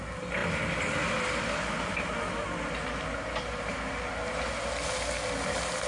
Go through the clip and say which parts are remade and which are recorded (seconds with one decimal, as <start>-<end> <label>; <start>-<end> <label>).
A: 0.0-5.9 recorded